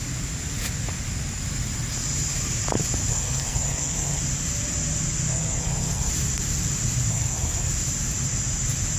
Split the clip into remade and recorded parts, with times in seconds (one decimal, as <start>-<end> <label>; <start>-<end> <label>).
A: 0.0-3.1 recorded; 3.1-4.2 remade; 4.2-5.3 recorded; 5.3-6.1 remade; 6.1-7.1 recorded; 7.1-7.7 remade; 7.7-9.0 recorded